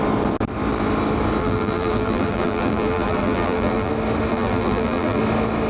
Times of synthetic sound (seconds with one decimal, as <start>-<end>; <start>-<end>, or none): 1.4-3.9; 4.3-5.2